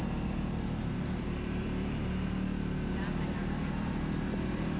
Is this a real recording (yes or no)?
no